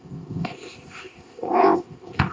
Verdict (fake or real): fake